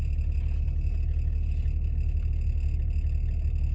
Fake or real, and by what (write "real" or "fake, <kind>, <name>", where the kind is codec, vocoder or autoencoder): real